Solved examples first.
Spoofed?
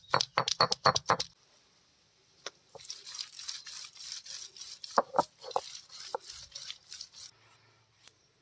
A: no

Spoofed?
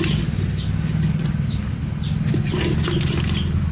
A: no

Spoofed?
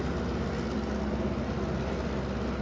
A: no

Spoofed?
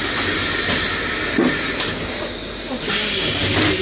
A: no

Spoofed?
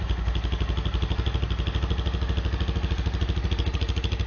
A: no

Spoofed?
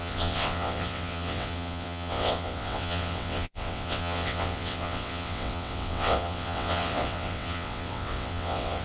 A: yes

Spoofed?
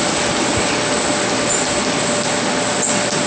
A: no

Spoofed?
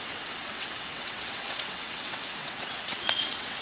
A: yes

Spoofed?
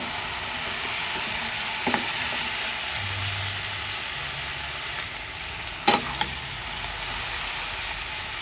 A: no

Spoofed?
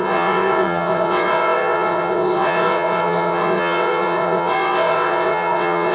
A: yes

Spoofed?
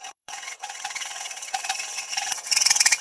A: yes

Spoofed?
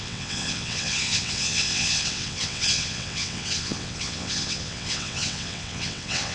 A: yes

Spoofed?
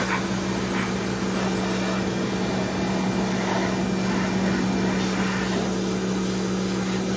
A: no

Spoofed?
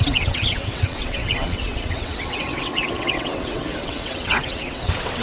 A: yes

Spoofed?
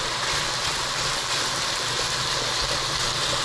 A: no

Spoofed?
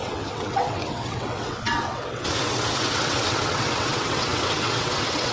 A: yes